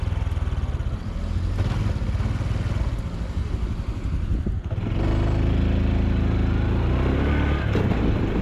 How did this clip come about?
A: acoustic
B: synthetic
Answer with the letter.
A